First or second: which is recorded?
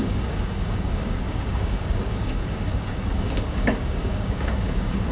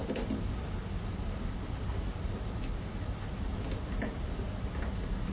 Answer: second